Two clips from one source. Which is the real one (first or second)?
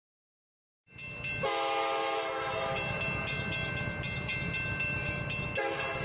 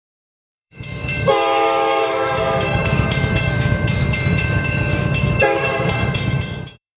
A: first